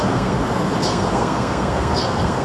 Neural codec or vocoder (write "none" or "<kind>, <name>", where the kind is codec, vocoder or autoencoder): codec, SNAC